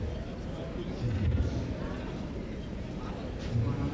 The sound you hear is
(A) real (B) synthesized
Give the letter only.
A